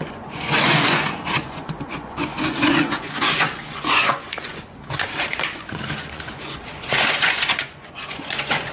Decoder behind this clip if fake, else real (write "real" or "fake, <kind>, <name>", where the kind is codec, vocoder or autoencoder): fake, vocoder, Vocos